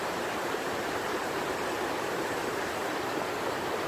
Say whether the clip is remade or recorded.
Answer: remade